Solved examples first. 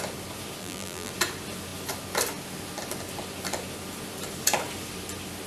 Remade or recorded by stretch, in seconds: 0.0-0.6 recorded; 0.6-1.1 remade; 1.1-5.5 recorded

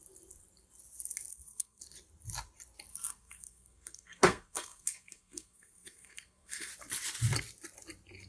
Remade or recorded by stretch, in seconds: 0.0-1.3 recorded; 1.3-1.8 remade; 1.8-2.9 recorded; 2.9-6.7 remade; 6.7-8.3 recorded

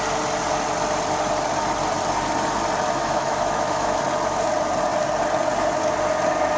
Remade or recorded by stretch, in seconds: 0.0-3.0 recorded; 3.0-4.0 remade; 4.0-6.6 recorded

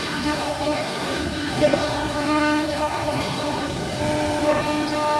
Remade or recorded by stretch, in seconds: 0.0-4.0 remade; 4.0-5.2 recorded

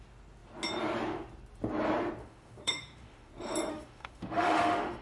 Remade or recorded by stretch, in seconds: 0.0-2.2 recorded; 2.2-3.3 remade; 3.3-3.7 recorded; 3.7-5.0 remade